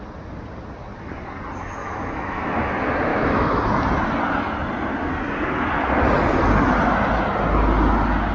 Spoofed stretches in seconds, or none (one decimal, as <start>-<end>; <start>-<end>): 1.8-2.7; 3.1-3.6